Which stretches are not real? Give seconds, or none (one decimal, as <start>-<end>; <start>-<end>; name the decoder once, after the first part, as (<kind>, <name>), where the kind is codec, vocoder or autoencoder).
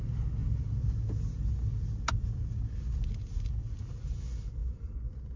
4.6-5.4 (vocoder, BigVGAN v2)